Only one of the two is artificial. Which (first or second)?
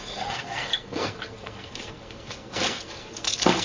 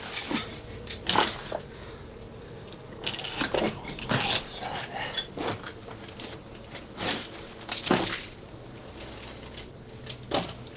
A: first